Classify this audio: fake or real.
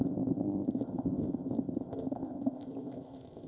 fake